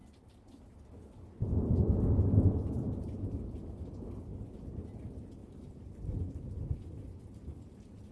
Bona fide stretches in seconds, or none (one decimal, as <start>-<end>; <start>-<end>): 0.0-5.4; 7.2-8.1